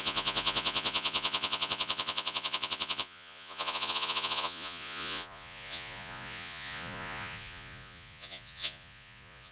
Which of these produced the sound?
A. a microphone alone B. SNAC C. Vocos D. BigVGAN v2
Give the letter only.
C